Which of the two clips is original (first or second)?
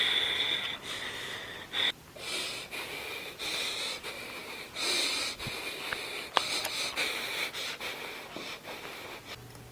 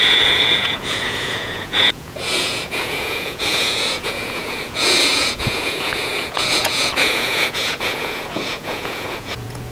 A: first